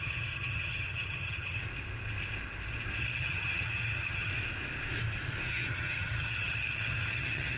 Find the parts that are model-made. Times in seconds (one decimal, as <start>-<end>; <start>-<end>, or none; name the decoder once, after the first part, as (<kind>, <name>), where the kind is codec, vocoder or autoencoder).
0.0-1.6 (vocoder, HiFi-GAN); 3.0-4.3; 5.5-7.6